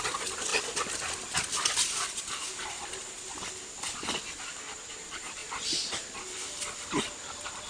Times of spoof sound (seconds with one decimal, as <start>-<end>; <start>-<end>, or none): none